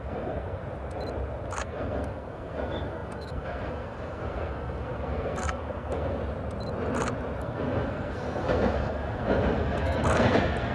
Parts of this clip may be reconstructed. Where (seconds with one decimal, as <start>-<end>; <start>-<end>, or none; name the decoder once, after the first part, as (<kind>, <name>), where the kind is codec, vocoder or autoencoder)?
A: 0.0-0.6 (codec, SNAC); 1.6-6.2; 7.4-10.7

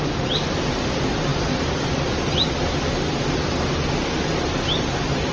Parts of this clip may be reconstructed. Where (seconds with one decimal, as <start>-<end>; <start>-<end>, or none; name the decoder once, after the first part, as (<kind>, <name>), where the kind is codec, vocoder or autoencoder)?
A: none

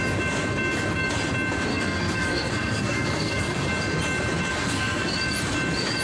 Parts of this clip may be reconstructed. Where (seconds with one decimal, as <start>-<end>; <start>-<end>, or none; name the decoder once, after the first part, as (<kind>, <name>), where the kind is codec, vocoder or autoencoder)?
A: 1.7-3.7 (codec, SNAC); 4.5-5.1

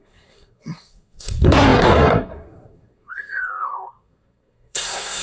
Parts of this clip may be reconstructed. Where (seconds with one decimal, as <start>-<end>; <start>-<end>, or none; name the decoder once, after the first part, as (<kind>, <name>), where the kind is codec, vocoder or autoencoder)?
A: 0.0-5.2 (codec, SNAC)